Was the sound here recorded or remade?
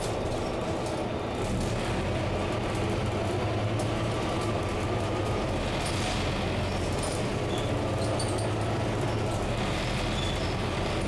recorded